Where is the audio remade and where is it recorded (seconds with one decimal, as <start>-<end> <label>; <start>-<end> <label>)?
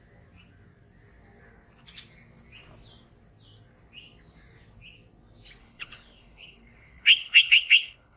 0.0-5.6 recorded; 5.6-8.2 remade